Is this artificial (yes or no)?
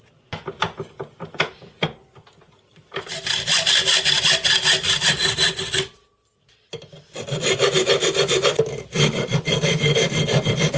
no